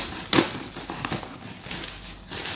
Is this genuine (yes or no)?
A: yes